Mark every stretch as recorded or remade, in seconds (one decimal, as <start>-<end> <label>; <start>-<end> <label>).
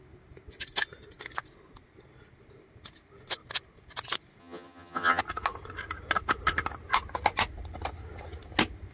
0.0-4.4 recorded; 4.4-5.2 remade; 5.2-8.9 recorded